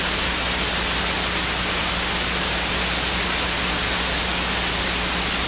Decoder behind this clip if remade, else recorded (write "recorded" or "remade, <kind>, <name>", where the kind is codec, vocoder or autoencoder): recorded